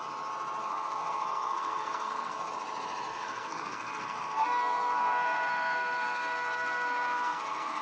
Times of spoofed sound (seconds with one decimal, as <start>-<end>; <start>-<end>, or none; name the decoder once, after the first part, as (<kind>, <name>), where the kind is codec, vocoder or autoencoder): 0.6-2.5 (codec, SNAC); 3.1-7.8

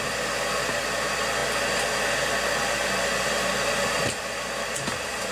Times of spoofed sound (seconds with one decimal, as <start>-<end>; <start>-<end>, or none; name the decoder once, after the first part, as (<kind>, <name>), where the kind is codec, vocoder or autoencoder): none

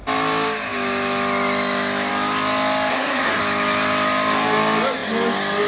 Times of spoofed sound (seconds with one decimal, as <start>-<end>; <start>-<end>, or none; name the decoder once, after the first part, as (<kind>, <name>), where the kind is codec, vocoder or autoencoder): 2.9-3.4 (codec, SNAC)

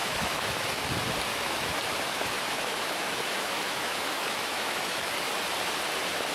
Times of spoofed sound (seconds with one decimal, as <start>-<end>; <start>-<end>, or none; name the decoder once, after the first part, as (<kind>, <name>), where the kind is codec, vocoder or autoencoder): 0.0-0.9 (autoencoder, DAC-VAE); 1.3-5.1

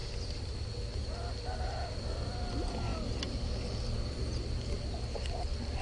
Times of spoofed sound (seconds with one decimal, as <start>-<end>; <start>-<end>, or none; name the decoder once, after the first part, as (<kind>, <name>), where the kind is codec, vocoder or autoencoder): none

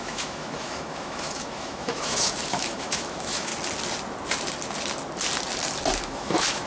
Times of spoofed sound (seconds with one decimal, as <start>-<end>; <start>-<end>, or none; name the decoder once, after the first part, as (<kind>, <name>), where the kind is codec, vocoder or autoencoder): 0.0-3.5 (autoencoder, DAC-VAE); 6.0-6.7

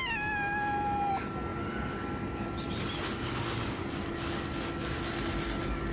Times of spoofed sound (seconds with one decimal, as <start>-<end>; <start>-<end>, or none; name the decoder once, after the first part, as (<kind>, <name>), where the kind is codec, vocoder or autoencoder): none

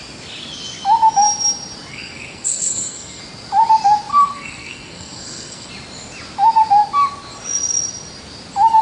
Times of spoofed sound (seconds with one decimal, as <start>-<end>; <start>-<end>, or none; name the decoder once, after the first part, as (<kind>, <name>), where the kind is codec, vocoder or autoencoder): 1.9-3.2 (codec, SNAC); 4.1-5.7